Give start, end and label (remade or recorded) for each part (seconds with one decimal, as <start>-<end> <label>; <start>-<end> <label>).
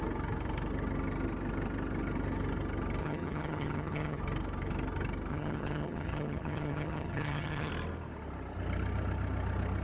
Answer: 0.0-3.0 recorded; 3.0-4.2 remade; 4.2-5.3 recorded; 5.3-7.7 remade; 7.7-9.8 recorded